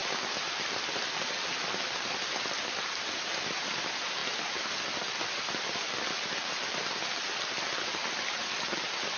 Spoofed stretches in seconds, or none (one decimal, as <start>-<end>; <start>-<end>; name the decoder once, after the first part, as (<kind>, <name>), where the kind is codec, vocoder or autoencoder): none

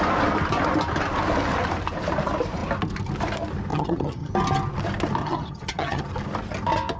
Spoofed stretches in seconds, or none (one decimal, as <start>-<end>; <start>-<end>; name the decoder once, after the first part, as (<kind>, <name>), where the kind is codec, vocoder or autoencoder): 3.7-4.3 (vocoder, HiFi-GAN); 5.2-6.0

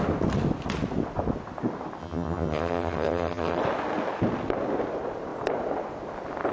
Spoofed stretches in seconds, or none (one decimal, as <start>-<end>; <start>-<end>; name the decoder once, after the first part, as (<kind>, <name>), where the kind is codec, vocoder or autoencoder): 2.0-3.6 (vocoder, HiFi-GAN)

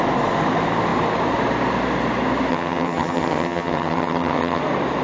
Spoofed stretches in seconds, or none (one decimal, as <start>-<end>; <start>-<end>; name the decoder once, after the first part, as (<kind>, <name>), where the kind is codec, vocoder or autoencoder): 2.5-4.6 (vocoder, HiFi-GAN)

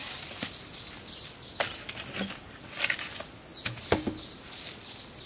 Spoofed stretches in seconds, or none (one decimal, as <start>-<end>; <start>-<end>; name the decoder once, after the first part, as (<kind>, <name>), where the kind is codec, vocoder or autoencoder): none

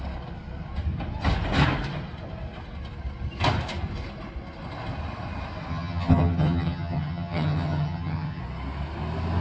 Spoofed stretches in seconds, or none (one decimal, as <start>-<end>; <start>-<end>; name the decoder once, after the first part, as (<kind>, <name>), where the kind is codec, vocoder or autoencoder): 5.7-8.4 (vocoder, HiFi-GAN)

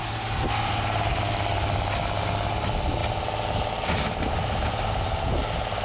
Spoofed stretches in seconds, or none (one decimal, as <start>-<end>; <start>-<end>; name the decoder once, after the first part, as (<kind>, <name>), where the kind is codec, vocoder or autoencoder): none